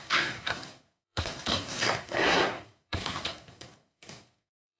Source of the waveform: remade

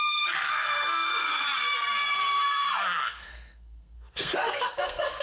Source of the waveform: remade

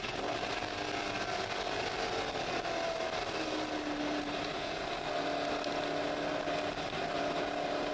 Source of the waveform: recorded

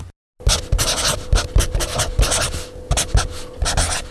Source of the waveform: recorded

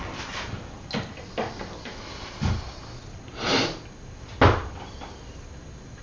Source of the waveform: recorded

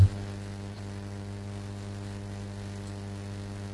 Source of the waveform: recorded